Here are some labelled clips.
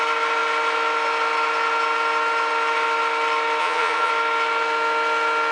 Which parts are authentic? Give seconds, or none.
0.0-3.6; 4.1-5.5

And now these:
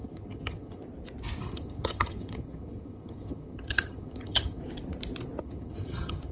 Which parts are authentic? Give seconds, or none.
0.8-1.4; 4.6-5.4

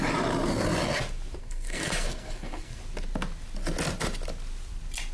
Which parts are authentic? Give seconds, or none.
0.0-1.4; 2.8-5.1

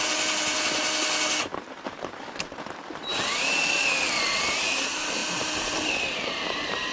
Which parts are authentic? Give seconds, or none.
0.8-1.4; 3.1-4.0

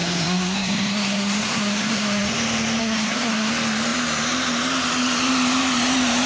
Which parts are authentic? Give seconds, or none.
2.3-2.8; 3.5-6.3

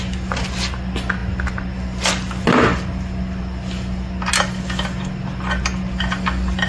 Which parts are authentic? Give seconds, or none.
0.0-6.7

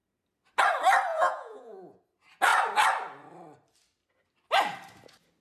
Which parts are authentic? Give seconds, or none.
0.0-1.1; 2.0-5.4

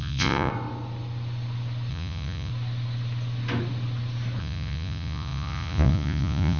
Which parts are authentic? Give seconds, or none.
0.5-1.9; 2.5-4.4